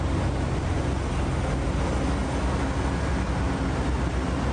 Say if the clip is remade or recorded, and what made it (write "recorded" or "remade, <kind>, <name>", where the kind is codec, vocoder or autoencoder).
recorded